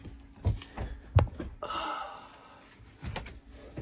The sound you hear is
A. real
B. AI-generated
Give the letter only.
A